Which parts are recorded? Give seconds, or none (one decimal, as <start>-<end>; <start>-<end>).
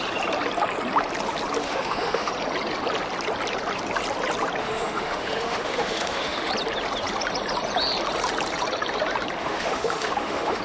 0.0-1.6; 2.3-4.6; 6.5-9.4